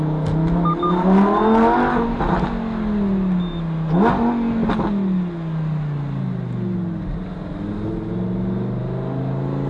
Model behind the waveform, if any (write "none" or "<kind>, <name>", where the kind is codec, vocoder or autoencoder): none